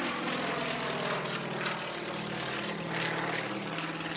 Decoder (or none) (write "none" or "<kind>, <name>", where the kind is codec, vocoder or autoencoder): none